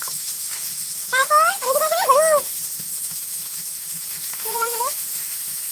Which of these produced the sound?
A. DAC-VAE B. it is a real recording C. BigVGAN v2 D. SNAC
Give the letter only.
A